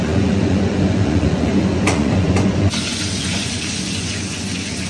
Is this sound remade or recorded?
remade